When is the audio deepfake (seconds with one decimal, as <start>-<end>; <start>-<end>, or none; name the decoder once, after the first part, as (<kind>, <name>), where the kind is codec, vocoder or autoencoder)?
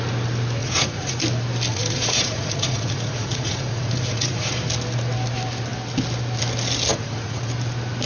0.6-1.2 (vocoder, Vocos); 1.7-4.6; 6.9-7.5